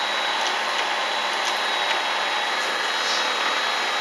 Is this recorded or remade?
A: recorded